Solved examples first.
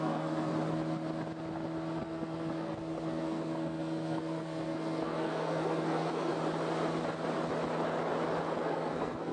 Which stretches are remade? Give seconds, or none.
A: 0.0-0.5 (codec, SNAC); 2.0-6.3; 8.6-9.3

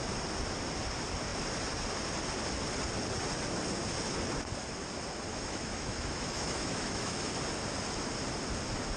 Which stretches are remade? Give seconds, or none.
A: 5.3-7.3 (autoencoder, DAC-VAE)

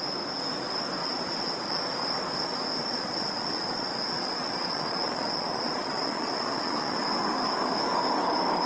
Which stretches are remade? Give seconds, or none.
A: 1.0-1.8 (vocoder, Vocos); 2.8-7.0

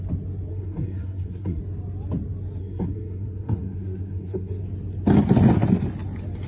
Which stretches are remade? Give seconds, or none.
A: 0.5-1.6 (codec, SNAC); 2.6-4.6